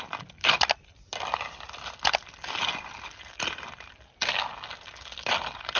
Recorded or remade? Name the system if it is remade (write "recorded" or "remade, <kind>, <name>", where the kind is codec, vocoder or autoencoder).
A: recorded